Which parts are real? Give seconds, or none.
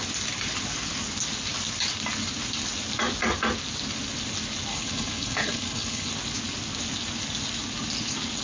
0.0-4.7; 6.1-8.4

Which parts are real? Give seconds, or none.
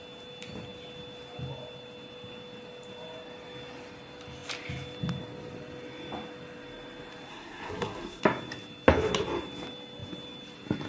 0.0-7.3; 8.2-10.9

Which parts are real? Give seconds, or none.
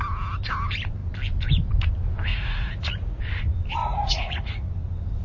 0.0-2.3; 3.2-3.8; 4.7-5.2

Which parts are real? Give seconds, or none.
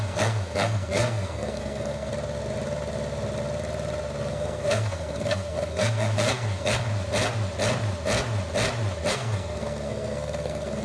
2.1-4.3; 6.9-9.1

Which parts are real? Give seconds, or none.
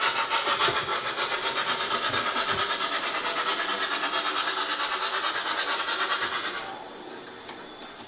0.0-8.1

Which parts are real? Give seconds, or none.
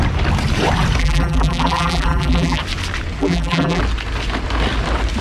0.0-1.0; 2.6-3.2; 3.8-5.2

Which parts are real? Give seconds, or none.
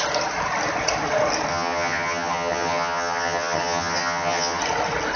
0.0-1.5; 4.6-5.2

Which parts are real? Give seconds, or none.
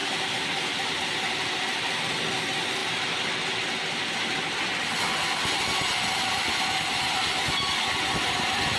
2.0-8.8